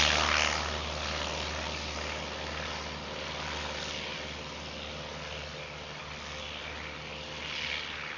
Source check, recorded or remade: recorded